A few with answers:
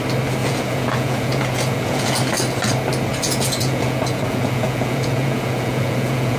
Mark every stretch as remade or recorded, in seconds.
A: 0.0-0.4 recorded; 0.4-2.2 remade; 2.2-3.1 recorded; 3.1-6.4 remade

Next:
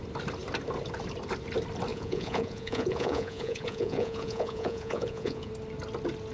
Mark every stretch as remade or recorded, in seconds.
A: 0.0-1.9 recorded; 1.9-5.5 remade; 5.5-6.3 recorded